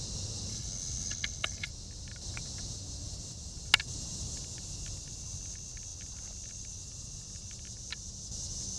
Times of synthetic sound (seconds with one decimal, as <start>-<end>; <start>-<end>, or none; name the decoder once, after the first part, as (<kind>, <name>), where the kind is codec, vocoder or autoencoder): 0.5-1.7 (codec, HILCodec)